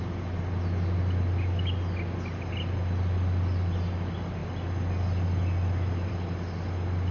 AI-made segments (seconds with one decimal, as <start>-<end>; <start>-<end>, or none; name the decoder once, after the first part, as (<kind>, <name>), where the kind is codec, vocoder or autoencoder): none